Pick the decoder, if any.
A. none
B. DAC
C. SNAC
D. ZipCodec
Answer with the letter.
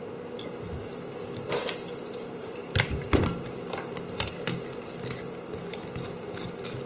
A